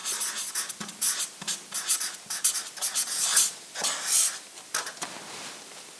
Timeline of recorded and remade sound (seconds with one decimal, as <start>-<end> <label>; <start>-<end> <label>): 0.0-6.0 remade